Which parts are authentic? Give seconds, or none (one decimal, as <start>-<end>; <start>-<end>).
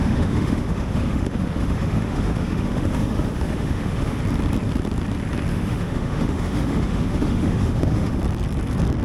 4.2-5.5; 8.2-9.0